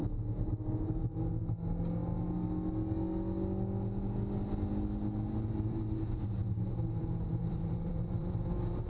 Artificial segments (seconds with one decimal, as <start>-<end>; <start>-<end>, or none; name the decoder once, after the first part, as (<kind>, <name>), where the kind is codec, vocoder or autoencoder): 5.3-8.9 (vocoder, BigVGAN v2)